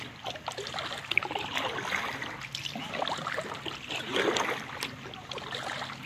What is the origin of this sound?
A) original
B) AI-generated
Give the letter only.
A